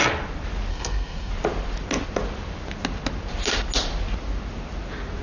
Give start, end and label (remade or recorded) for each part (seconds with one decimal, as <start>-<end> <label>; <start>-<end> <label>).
0.0-0.7 recorded; 0.7-1.3 remade; 1.3-5.2 recorded